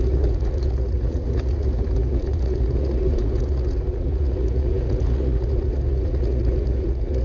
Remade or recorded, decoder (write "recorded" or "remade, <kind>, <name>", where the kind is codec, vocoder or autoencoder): remade, vocoder, Vocos